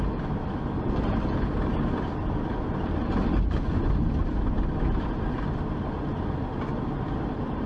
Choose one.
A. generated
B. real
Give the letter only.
B